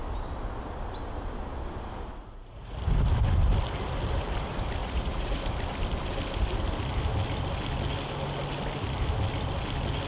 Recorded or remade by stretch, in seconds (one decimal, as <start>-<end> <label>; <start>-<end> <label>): 0.0-2.2 recorded; 2.2-2.8 remade; 2.8-4.8 recorded; 4.8-5.4 remade; 5.4-10.1 recorded